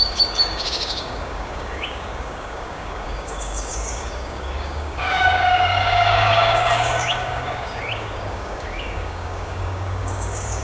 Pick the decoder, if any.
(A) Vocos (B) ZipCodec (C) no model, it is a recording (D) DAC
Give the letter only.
D